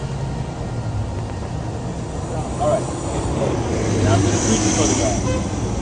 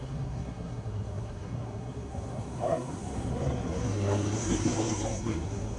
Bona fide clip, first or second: first